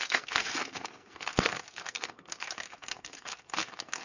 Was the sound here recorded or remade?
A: remade